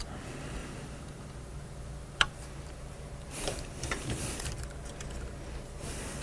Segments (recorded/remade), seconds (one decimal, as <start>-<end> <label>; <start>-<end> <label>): 0.0-0.6 recorded; 0.6-4.3 remade; 4.3-6.2 recorded